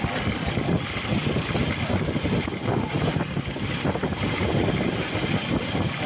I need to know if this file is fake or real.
real